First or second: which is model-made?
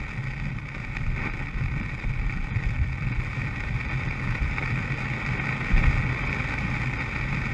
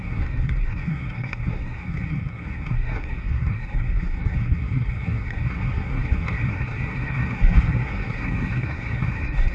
second